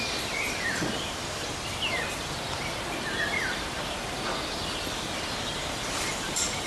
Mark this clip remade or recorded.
remade